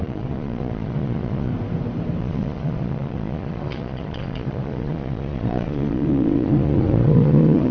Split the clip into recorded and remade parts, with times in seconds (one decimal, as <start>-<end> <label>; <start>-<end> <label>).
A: 0.0-1.5 remade; 1.5-2.2 recorded; 2.2-7.7 remade